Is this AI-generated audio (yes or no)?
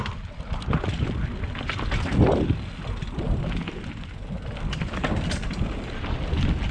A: no